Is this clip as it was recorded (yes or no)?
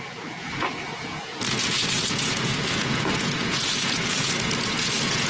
no